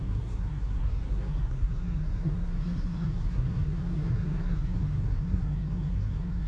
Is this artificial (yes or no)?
yes